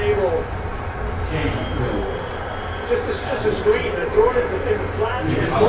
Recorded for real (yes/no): yes